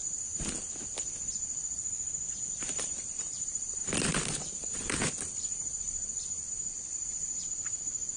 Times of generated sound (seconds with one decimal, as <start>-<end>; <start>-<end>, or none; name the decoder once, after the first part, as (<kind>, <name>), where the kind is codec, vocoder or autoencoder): 2.5-3.8 (vocoder, BigVGAN v2)